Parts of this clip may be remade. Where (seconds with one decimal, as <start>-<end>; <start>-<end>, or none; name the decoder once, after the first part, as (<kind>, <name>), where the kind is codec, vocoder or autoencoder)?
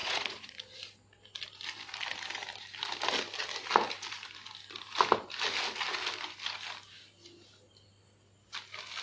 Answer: 0.0-0.6 (vocoder, Vocos)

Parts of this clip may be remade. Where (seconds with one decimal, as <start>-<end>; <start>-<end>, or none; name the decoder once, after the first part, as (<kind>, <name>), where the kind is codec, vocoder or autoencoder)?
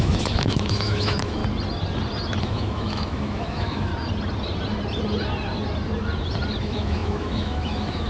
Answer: 0.0-1.4 (autoencoder, DAC-VAE); 2.4-3.9; 6.6-8.1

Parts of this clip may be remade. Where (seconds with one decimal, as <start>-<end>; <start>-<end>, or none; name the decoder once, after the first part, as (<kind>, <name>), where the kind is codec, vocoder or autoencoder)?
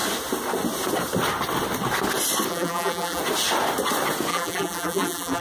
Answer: 2.5-3.2 (vocoder, BigVGAN v2); 4.3-5.4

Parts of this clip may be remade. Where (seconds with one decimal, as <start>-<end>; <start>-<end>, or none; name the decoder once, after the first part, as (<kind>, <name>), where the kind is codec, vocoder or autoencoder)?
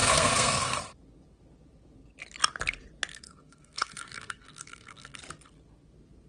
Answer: 0.0-0.8 (codec, SNAC); 3.1-5.2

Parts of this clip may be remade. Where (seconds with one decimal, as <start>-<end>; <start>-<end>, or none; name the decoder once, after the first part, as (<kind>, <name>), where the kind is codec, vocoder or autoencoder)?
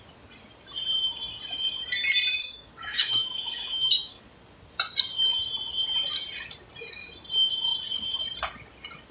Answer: 2.4-4.3 (autoencoder, DAC-VAE)